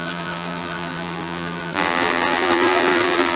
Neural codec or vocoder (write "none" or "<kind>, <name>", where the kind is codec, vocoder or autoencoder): vocoder, BigVGAN v2